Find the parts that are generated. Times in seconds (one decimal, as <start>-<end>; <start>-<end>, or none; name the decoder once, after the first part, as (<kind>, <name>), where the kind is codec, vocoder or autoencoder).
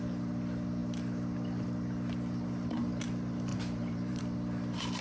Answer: 3.5-4.2 (vocoder, BigVGAN v2)